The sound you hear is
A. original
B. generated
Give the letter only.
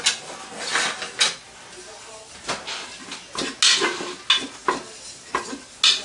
A